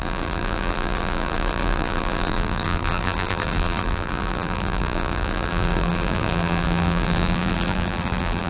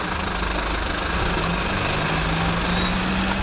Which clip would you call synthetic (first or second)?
first